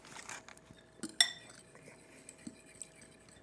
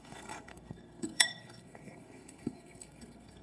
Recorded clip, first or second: first